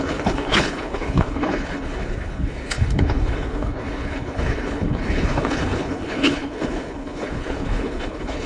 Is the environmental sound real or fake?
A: fake